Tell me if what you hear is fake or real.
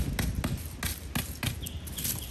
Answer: real